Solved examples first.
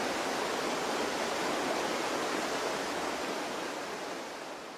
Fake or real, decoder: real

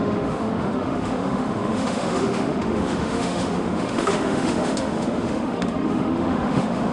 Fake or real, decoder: fake, autoencoder, DAC-VAE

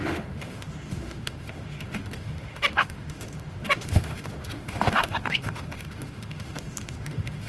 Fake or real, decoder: fake, autoencoder, DAC-VAE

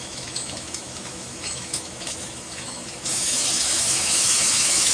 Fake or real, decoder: fake, autoencoder, DAC-VAE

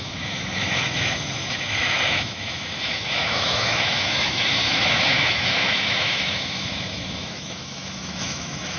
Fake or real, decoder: fake, autoencoder, DAC-VAE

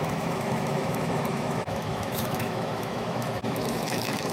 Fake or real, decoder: fake, autoencoder, DAC-VAE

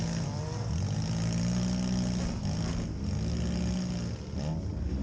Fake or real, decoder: real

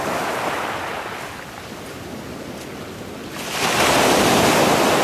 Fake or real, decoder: real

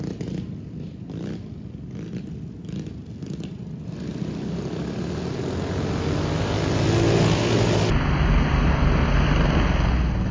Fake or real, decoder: real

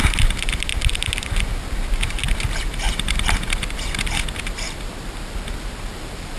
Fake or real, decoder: real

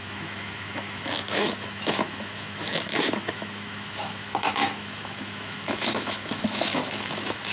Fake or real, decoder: fake, autoencoder, DAC-VAE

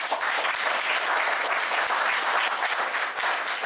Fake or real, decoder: real